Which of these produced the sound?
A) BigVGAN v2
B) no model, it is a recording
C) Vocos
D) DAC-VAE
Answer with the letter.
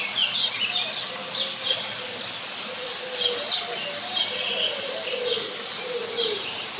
B